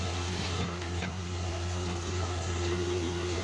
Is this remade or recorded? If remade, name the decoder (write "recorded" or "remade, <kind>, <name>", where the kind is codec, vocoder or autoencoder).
remade, codec, SNAC